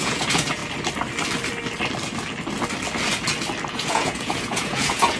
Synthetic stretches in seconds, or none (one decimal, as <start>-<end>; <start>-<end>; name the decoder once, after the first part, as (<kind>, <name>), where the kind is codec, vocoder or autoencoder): 0.0-0.6 (vocoder, Vocos); 3.7-5.2